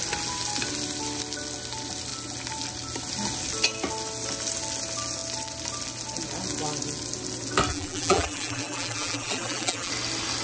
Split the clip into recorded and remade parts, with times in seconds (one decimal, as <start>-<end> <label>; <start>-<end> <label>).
0.0-7.7 recorded; 7.7-9.9 remade; 9.9-10.4 recorded